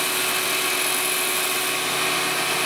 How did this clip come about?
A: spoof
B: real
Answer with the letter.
B